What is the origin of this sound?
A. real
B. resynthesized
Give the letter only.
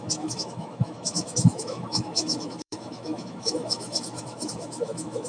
B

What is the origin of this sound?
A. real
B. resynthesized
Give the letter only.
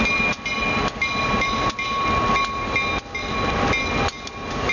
A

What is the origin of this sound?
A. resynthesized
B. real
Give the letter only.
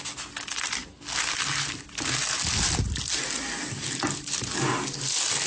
B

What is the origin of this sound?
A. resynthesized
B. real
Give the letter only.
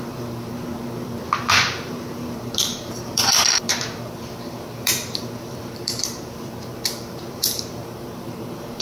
A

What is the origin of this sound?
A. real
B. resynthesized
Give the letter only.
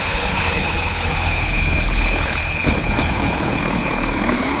B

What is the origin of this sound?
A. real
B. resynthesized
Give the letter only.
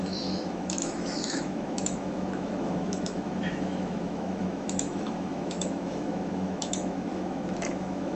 B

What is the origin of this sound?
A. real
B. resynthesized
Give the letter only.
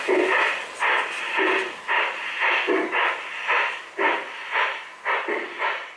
A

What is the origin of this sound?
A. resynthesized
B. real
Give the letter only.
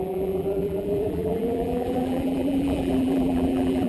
A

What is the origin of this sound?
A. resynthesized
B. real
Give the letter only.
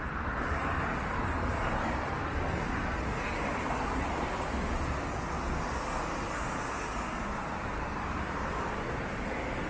B